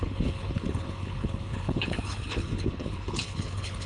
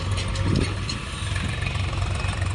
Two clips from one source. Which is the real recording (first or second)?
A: second